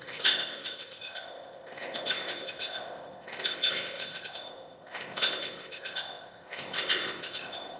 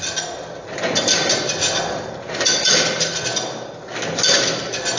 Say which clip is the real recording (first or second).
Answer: second